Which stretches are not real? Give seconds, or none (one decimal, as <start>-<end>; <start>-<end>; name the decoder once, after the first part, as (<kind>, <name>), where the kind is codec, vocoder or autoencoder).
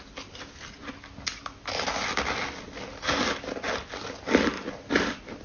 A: none